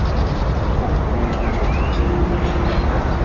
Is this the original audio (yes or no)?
yes